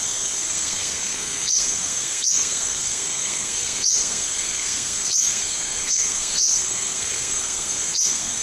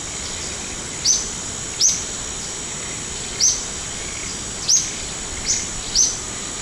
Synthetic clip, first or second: first